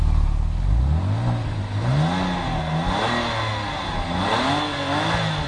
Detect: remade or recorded recorded